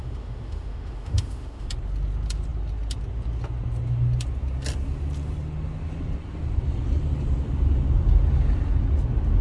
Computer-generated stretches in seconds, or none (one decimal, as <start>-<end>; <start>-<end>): 0.0-1.7